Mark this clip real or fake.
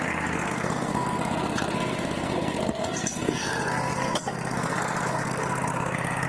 fake